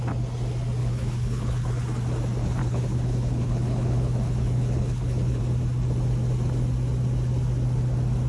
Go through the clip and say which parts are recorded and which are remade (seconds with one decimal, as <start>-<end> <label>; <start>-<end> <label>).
0.0-0.8 recorded; 0.8-1.7 remade; 1.7-2.6 recorded; 2.6-5.4 remade; 5.4-8.3 recorded